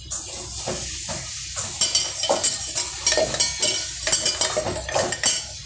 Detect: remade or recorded recorded